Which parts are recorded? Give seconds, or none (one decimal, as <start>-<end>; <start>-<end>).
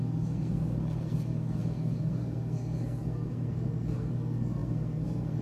none